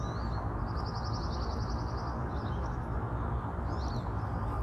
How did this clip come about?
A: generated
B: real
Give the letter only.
B